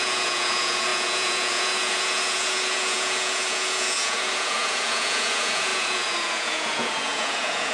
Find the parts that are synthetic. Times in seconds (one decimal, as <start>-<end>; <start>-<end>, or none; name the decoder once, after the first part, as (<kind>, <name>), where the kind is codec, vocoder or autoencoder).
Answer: 0.0-7.7 (vocoder, Vocos)